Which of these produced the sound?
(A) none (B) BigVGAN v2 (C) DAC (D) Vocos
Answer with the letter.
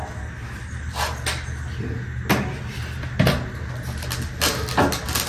A